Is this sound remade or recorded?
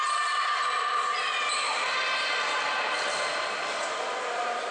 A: recorded